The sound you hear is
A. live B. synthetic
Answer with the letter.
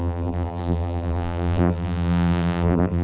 B